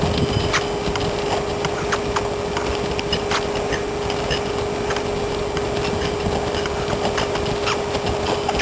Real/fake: real